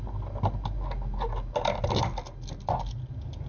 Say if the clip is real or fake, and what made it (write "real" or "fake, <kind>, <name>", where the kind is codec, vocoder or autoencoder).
real